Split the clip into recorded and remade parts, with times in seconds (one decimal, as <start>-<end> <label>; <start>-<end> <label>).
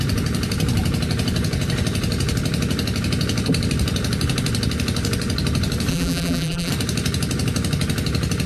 0.0-5.9 recorded; 5.9-6.7 remade; 6.7-8.5 recorded